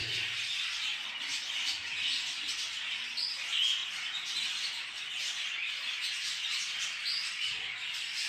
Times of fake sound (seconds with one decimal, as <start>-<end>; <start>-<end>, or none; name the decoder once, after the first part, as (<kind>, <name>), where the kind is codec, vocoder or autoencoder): none